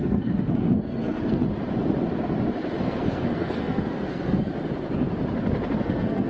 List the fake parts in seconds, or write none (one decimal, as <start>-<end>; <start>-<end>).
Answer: 0.0-1.4; 2.8-4.5; 5.7-6.3